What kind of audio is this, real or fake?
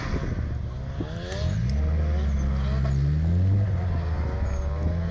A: real